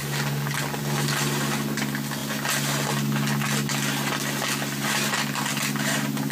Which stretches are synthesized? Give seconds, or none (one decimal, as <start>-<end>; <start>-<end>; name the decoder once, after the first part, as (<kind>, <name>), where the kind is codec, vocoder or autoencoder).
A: none